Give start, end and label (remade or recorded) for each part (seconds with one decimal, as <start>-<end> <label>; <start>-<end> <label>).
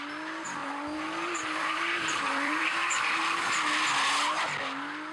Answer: 0.0-0.6 recorded; 0.6-3.7 remade; 3.7-5.1 recorded